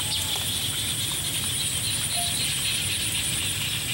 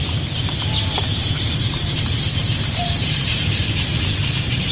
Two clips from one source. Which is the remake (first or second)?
second